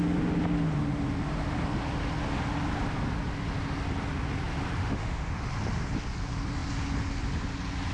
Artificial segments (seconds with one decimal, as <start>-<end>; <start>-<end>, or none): 4.8-5.5